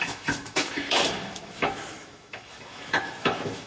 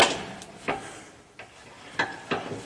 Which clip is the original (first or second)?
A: second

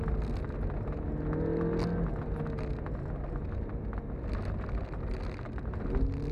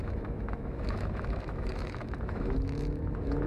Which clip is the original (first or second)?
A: first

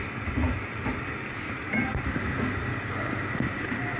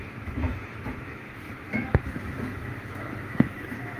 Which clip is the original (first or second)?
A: first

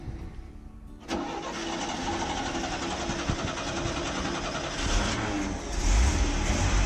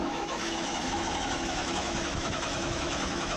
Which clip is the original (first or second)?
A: first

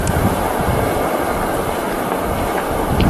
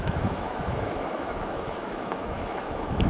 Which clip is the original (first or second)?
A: first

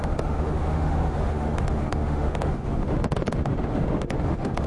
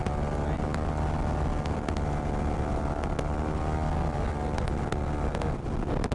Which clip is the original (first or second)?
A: second